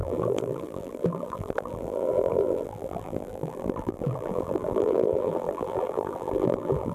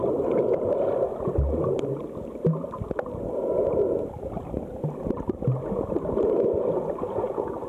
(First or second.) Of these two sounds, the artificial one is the first